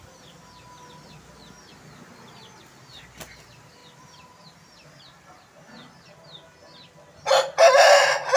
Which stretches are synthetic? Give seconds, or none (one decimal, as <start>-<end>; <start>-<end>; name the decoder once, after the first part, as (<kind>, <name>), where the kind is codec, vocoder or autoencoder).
none